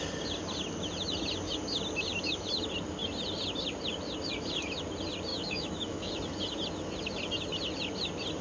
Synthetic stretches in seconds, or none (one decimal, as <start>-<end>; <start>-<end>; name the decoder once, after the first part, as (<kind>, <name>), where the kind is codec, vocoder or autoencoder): 5.3-6.1 (autoencoder, DAC-VAE)